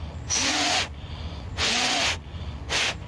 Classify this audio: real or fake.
fake